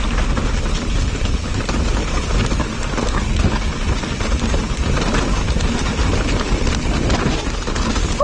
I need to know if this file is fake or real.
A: real